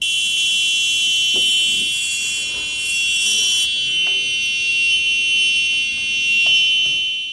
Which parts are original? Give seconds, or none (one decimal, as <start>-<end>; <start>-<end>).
0.0-7.3